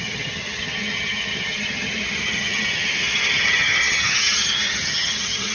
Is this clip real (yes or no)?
no